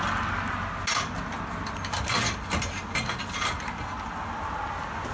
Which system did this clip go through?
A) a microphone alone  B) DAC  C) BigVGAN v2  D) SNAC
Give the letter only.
A